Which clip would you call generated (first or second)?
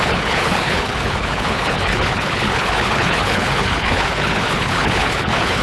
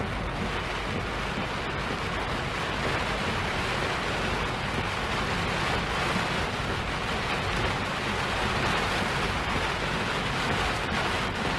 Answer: first